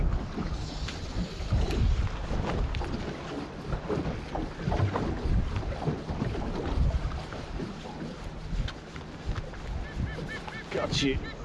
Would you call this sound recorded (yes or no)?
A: yes